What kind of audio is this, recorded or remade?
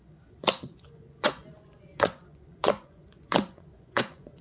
remade